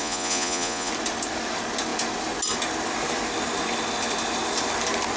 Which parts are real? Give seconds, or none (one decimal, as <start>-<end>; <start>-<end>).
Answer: 0.9-5.2